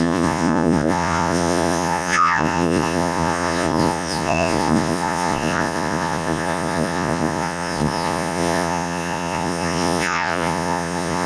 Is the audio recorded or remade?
remade